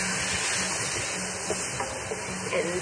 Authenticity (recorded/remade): recorded